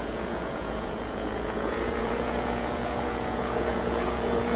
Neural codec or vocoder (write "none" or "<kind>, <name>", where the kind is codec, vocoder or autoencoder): vocoder, Vocos